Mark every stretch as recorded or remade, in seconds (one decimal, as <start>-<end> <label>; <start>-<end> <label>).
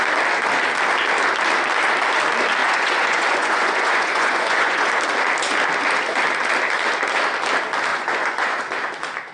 0.0-2.6 recorded; 2.6-4.9 remade; 4.9-7.9 recorded; 7.9-8.6 remade; 8.6-9.3 recorded